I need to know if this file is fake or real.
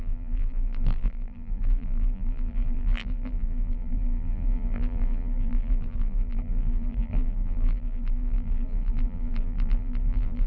fake